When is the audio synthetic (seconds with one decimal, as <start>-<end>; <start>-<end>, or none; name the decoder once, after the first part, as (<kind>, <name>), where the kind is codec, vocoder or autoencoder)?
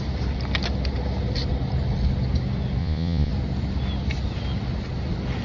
2.8-3.3 (vocoder, Vocos)